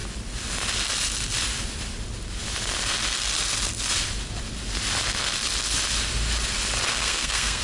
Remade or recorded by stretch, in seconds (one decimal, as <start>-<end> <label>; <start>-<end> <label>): 0.0-6.9 recorded; 6.9-7.6 remade